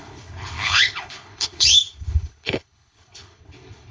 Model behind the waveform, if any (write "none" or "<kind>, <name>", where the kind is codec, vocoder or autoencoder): codec, HILCodec